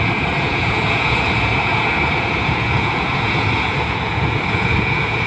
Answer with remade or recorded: remade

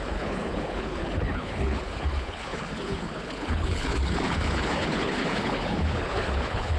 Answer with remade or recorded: remade